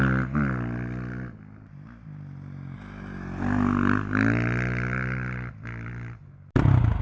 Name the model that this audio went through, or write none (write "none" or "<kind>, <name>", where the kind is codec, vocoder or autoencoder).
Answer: none